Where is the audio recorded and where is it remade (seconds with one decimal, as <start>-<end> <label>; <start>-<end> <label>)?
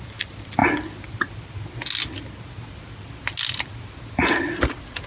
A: 0.0-5.1 recorded